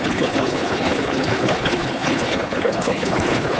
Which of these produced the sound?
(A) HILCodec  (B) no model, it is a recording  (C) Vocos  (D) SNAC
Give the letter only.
A